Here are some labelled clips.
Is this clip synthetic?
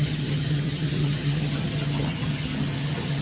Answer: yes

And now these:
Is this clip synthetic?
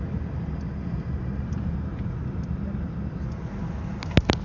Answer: no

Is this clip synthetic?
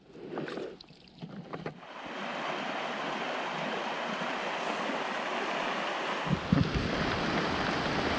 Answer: no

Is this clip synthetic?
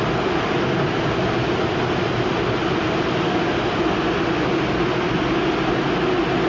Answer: no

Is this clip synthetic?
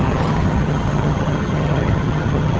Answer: yes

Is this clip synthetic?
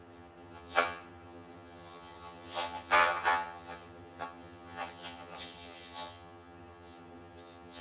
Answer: yes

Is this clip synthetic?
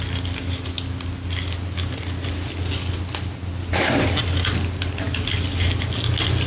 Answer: no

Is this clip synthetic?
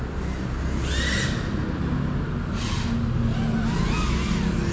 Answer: no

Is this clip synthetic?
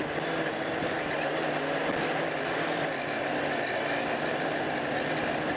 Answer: no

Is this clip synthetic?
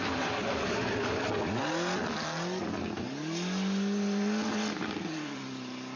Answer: no